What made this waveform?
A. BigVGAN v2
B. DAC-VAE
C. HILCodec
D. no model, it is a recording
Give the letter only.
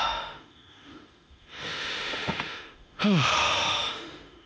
B